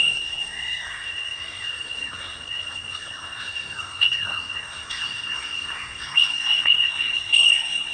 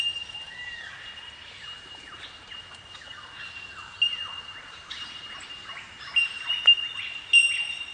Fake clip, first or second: first